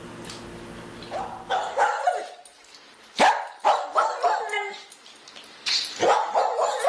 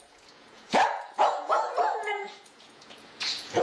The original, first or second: first